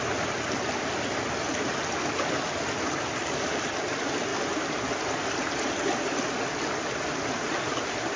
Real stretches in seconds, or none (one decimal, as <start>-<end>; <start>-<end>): 0.0-8.2

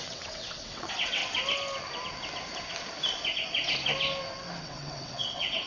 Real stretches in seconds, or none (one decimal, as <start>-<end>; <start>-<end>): 1.2-4.6

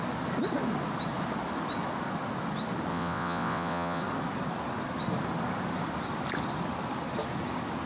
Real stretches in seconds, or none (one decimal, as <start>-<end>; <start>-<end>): 0.0-2.9; 4.0-7.9

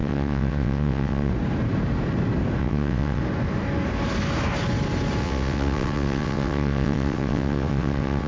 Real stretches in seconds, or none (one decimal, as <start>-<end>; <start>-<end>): 1.3-2.6; 3.2-5.2

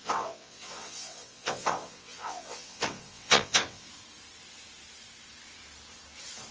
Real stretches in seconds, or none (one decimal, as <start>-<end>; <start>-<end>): 3.9-6.5

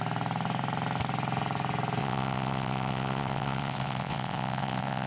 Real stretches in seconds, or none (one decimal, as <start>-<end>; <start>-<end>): 0.0-2.0

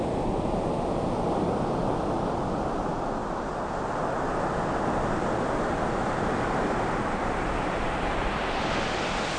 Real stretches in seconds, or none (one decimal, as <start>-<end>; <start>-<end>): 0.0-9.4

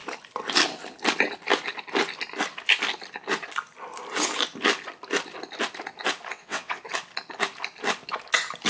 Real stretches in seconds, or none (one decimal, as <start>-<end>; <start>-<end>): 0.0-6.3; 6.8-8.7